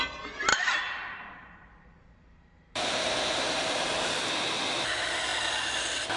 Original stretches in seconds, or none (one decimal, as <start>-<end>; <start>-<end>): 0.0-0.5; 4.2-6.2